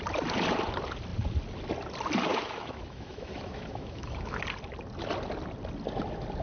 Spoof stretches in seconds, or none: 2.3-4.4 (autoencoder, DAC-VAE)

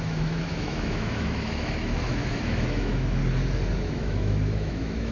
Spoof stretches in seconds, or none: 0.0-3.2 (autoencoder, DAC-VAE); 3.9-5.1

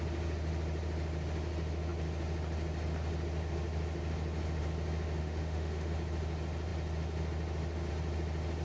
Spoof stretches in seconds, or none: 5.2-5.9 (autoencoder, DAC-VAE)

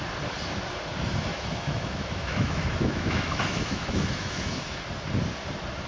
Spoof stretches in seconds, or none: 1.3-4.8 (autoencoder, DAC-VAE)

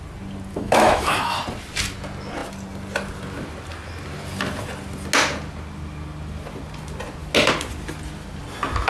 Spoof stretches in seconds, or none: 0.5-1.4 (autoencoder, DAC-VAE)